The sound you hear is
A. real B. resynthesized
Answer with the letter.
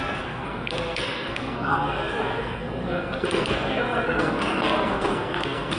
B